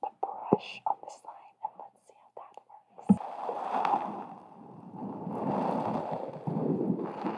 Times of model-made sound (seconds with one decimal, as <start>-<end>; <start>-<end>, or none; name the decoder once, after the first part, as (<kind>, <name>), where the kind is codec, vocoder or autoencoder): none